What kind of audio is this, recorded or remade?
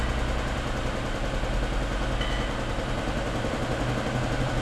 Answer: recorded